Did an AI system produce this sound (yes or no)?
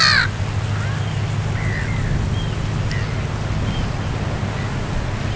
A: no